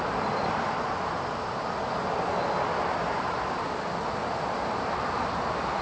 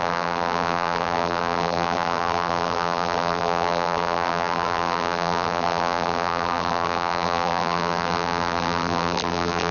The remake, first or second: second